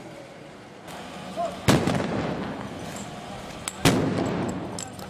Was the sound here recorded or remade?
recorded